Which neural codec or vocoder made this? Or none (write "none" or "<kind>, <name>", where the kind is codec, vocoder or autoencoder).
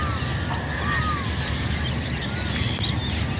none